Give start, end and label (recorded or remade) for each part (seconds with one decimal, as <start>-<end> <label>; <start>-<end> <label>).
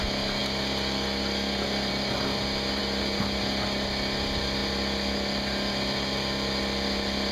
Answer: 0.0-7.3 recorded